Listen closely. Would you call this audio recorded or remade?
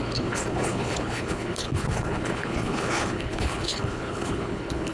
remade